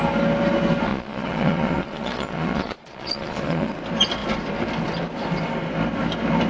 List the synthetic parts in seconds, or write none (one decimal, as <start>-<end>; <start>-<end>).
0.9-3.7